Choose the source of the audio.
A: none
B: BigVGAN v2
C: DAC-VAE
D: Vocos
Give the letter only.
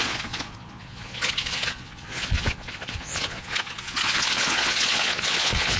D